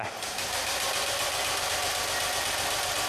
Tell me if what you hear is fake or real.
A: real